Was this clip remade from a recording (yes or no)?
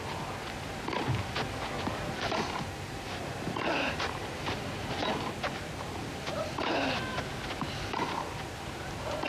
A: no